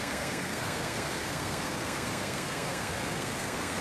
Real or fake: fake